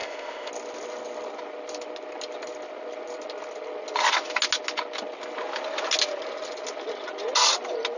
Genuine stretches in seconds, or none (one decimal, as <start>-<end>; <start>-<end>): 0.5-8.0